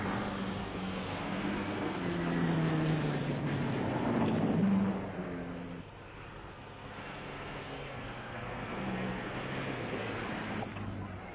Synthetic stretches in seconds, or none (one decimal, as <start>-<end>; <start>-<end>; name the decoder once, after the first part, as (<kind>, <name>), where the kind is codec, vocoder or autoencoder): 0.6-2.0 (codec, SNAC); 6.5-10.1